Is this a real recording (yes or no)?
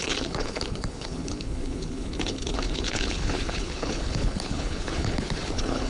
no